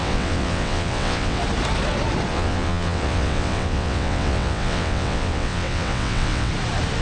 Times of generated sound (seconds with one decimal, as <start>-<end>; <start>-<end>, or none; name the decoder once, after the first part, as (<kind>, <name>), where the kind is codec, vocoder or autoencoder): 0.0-1.4 (vocoder, WaveNeXt); 2.3-6.5

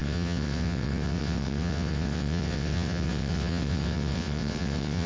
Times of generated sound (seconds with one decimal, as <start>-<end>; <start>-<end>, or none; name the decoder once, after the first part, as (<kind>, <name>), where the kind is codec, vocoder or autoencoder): 0.0-5.1 (vocoder, WaveNeXt)

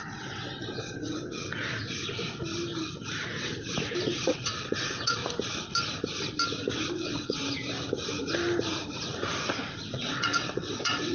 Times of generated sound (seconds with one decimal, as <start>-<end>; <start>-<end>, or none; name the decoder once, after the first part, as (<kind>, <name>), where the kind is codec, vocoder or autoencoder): 0.0-1.5 (vocoder, WaveNeXt); 4.0-5.2; 6.9-7.4; 9.9-11.1